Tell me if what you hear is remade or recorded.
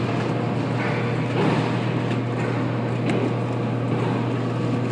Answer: recorded